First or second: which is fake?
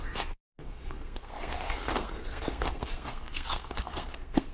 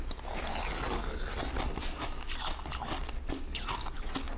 first